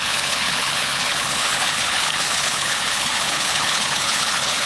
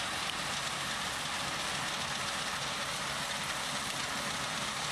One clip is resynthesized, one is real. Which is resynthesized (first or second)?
first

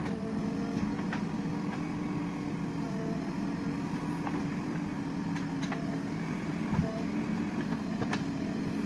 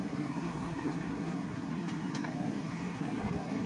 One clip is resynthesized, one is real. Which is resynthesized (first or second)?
second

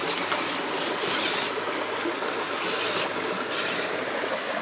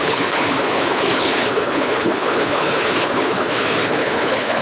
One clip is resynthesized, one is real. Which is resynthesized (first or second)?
second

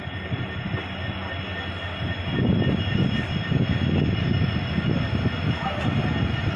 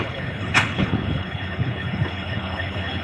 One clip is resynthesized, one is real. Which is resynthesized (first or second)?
second